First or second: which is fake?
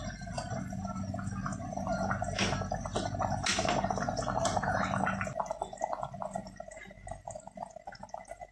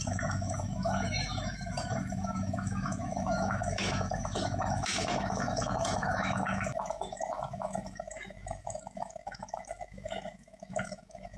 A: second